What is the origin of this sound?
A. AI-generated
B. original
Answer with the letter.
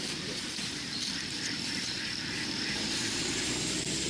A